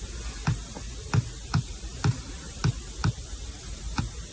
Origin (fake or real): real